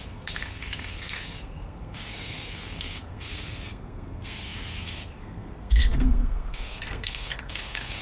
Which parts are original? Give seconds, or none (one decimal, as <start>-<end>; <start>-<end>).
none